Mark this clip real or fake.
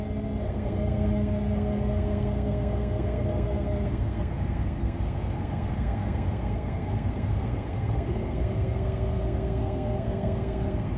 fake